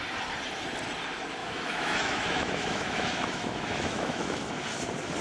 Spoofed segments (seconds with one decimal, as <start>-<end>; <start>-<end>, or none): 1.4-4.5